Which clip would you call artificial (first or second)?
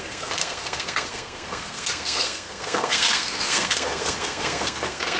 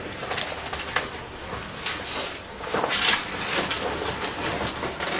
first